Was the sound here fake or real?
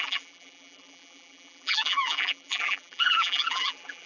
fake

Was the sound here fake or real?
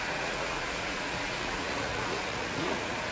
fake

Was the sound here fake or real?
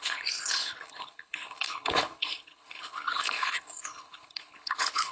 fake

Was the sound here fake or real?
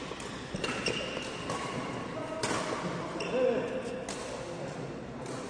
real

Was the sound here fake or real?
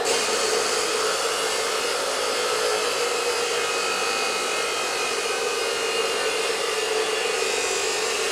real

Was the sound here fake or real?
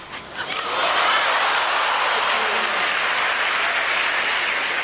real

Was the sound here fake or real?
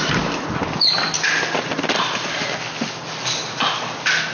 real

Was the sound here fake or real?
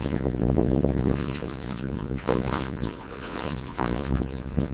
fake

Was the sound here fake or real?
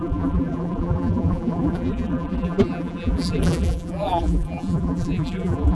fake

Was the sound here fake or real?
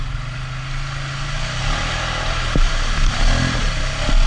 real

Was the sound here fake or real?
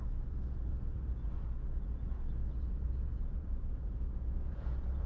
fake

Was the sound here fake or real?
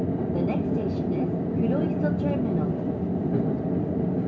real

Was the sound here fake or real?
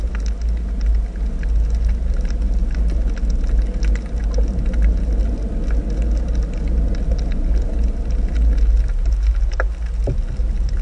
real